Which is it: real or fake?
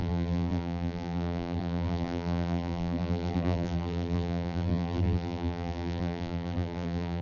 fake